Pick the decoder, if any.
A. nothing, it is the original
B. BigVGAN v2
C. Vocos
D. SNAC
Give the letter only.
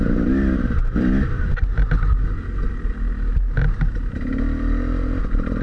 A